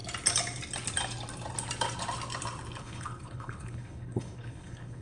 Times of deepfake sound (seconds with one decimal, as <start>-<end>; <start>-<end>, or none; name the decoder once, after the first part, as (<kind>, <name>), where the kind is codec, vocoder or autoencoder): 2.8-5.0 (codec, HILCodec)